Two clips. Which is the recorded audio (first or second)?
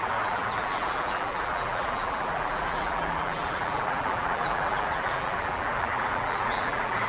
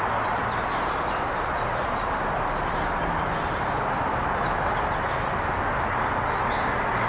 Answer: second